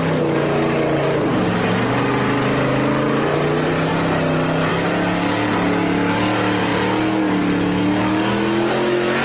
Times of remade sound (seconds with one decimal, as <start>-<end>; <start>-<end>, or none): none